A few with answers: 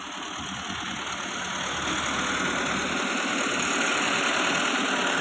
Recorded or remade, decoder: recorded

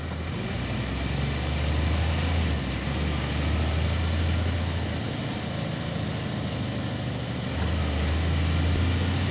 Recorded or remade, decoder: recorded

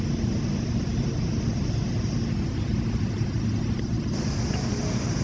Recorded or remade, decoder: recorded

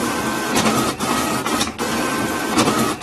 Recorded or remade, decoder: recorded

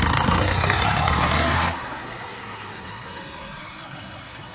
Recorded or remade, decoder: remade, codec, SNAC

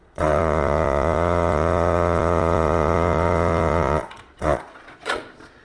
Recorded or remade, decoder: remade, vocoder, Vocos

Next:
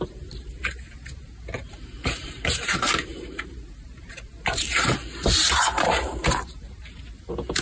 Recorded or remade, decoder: remade, vocoder, BigVGAN v2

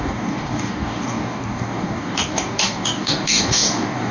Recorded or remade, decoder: remade, codec, DAC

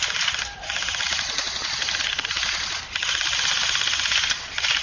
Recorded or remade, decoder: remade, vocoder, BigVGAN v2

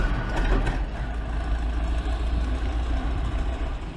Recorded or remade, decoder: recorded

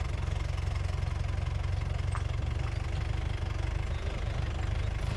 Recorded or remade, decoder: recorded